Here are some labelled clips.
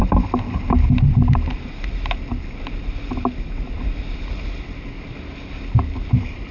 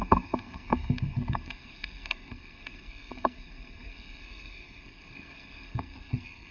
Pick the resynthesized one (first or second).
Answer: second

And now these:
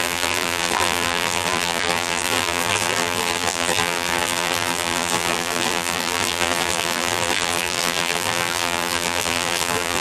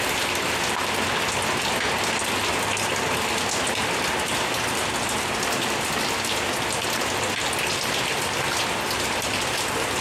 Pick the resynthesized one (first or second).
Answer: first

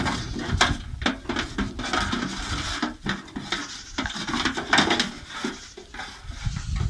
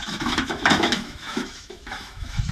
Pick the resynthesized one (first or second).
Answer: second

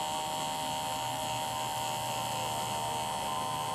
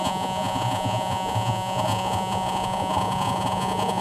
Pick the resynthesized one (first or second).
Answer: second